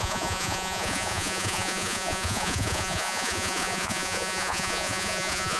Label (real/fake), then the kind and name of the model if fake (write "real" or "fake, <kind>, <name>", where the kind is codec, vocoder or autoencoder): fake, vocoder, Vocos